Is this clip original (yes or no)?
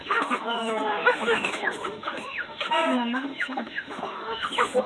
no